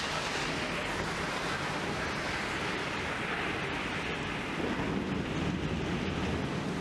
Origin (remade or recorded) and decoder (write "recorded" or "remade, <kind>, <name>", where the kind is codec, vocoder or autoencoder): recorded